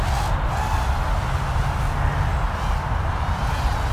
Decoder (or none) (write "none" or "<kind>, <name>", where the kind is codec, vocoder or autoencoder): none